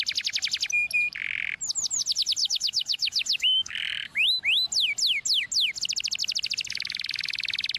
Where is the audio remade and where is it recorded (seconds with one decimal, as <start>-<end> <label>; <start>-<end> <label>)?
0.0-2.4 recorded; 2.4-4.4 remade; 4.4-7.8 recorded